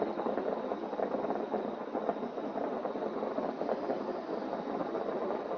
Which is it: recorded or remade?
recorded